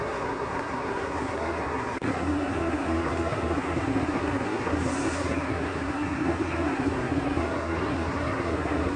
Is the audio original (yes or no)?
no